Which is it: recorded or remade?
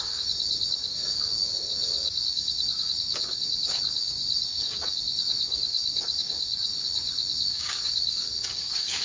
remade